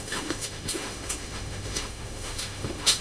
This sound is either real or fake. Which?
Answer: fake